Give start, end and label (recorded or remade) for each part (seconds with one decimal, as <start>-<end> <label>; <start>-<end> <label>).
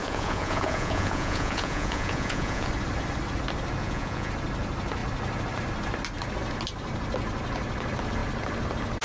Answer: 0.0-2.7 remade; 2.7-3.8 recorded; 3.8-4.3 remade; 4.3-9.0 recorded